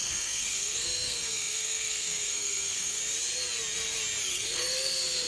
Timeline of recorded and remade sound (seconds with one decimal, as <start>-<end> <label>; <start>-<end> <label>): 0.0-3.0 remade; 3.0-4.3 recorded; 4.3-5.3 remade